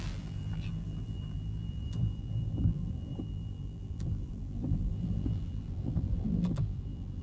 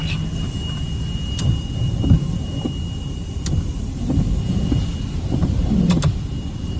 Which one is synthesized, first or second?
first